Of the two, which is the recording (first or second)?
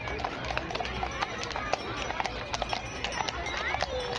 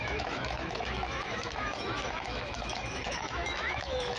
first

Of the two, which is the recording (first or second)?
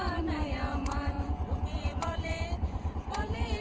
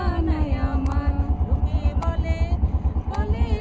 second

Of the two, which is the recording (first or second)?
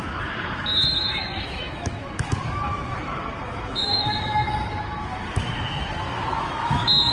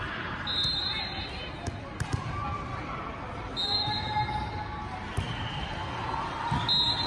second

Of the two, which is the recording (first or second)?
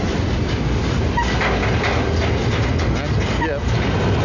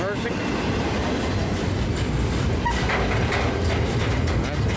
first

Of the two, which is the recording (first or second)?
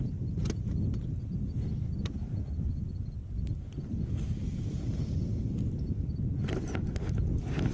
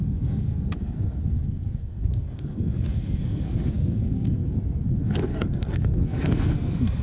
first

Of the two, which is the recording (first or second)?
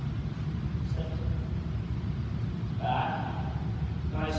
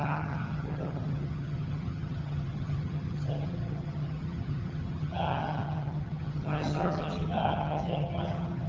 first